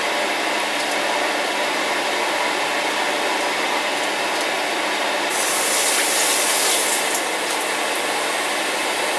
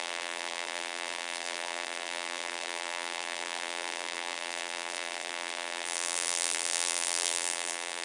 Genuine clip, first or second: first